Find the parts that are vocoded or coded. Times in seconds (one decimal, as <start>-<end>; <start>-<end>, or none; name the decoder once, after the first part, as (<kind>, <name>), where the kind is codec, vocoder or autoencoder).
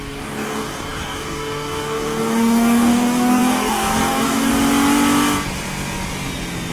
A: 0.0-4.5 (codec, DAC)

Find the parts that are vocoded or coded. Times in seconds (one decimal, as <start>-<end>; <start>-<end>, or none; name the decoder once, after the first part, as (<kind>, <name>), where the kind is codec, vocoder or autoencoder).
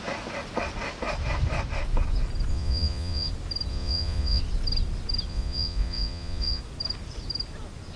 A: 2.5-3.3 (vocoder, Vocos); 3.7-4.4; 5.3-6.6